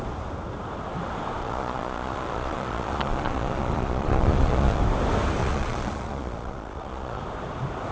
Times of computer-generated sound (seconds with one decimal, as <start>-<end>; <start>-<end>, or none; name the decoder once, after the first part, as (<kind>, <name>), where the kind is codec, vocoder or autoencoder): 1.4-4.8 (vocoder, Vocos); 5.4-7.2